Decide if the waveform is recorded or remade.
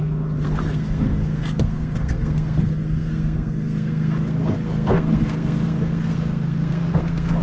remade